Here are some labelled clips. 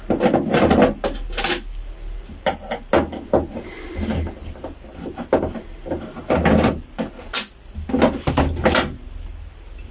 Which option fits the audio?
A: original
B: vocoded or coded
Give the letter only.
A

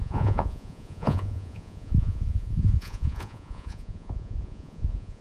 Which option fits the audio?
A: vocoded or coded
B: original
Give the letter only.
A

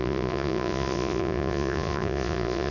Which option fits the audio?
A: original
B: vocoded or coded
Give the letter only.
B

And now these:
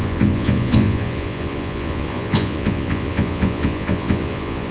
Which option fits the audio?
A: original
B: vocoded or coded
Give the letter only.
B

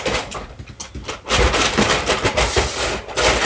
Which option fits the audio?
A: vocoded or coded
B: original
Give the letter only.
B